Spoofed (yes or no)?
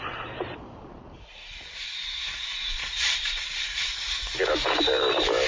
yes